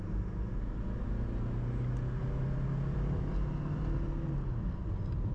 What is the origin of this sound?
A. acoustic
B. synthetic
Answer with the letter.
A